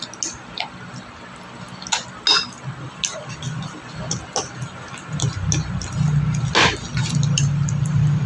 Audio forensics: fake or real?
real